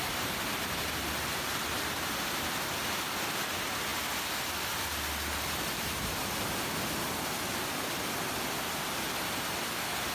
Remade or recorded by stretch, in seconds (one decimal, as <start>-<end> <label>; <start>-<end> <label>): 0.0-10.1 recorded